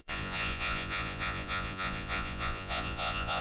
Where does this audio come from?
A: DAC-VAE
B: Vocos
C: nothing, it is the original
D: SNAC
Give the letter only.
B